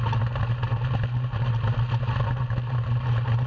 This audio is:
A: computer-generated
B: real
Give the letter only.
B